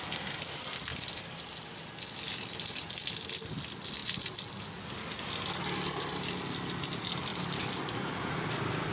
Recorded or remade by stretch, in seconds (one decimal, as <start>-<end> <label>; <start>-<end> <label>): 0.0-0.9 recorded; 0.9-2.5 remade; 2.5-4.0 recorded; 4.0-5.7 remade; 5.7-7.3 recorded; 7.3-8.9 remade

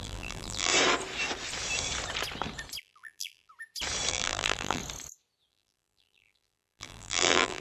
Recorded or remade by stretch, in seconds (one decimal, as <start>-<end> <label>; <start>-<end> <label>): 0.0-0.7 remade; 0.7-2.8 recorded; 2.8-3.5 remade; 3.5-4.1 recorded; 4.1-4.8 remade; 4.8-5.5 recorded; 5.5-7.6 remade

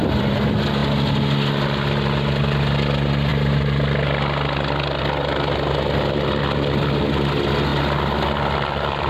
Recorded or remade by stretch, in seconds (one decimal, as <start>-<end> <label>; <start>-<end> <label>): 0.0-0.8 remade; 0.8-1.8 recorded; 1.8-9.1 remade

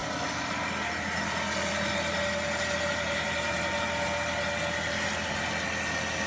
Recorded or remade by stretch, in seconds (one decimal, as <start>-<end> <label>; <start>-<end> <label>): 0.0-2.9 recorded; 2.9-3.7 remade; 3.7-6.3 recorded

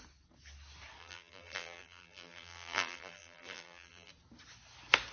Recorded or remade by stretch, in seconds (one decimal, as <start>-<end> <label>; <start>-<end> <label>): 0.0-1.0 recorded; 1.0-4.1 remade; 4.1-5.1 recorded

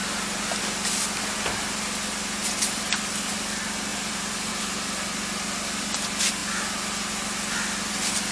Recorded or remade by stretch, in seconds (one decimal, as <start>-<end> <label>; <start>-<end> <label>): 0.0-3.9 recorded; 3.9-4.5 remade; 4.5-8.3 recorded